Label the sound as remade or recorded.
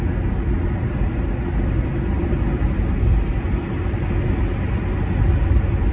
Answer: recorded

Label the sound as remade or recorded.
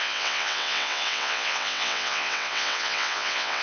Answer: remade